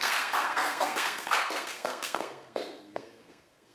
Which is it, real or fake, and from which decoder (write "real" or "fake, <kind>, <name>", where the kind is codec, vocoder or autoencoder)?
fake, codec, SNAC